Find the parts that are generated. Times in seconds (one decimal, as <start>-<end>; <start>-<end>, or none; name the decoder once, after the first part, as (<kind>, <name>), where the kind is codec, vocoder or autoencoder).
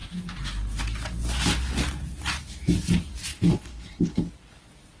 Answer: 3.3-4.3 (codec, HILCodec)